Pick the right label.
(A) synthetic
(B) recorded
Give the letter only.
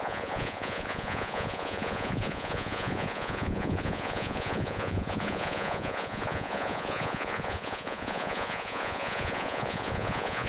A